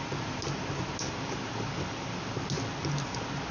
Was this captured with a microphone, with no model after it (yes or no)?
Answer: yes